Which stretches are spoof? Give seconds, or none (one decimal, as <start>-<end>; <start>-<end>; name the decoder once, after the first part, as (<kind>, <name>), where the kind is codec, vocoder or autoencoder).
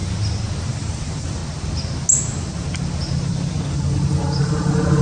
0.7-1.4 (vocoder, BigVGAN v2); 4.4-5.0